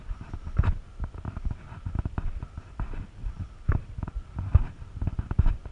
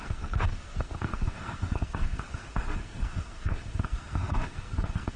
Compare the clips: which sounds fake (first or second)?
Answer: second